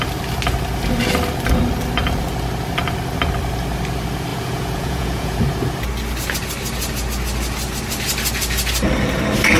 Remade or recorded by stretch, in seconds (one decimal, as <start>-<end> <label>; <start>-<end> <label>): 0.0-4.3 recorded; 4.3-5.4 remade; 5.4-9.6 recorded